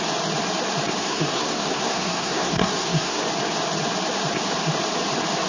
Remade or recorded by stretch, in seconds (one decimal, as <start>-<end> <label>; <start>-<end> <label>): 0.0-1.0 recorded; 1.0-3.2 remade; 3.2-5.5 recorded